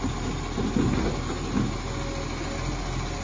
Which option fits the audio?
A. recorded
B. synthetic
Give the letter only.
A